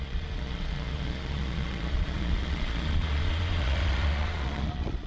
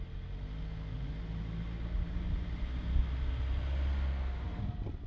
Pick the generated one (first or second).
first